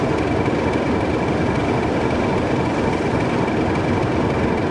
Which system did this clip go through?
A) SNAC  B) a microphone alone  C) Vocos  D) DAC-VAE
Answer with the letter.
B